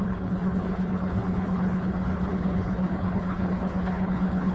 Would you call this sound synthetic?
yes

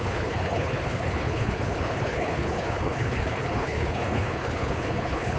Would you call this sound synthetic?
yes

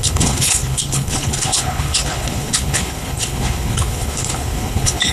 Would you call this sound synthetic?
yes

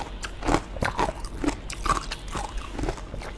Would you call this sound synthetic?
no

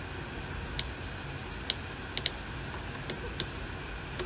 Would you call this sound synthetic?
no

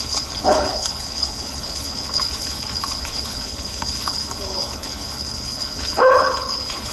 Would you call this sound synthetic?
yes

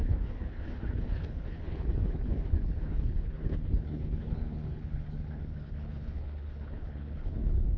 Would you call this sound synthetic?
yes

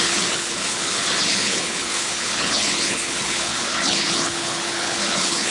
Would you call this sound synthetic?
yes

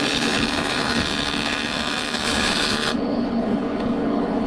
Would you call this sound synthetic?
yes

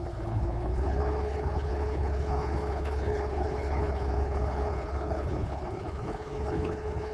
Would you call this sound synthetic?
yes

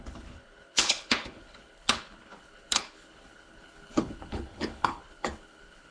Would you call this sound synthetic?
yes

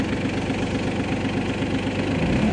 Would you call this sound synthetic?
no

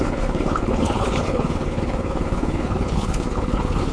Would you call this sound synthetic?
yes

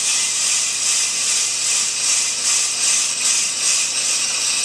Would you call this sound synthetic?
no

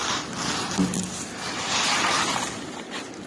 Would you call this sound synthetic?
no